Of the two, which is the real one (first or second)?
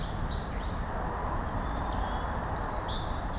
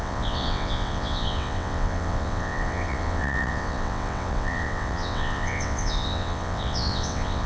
first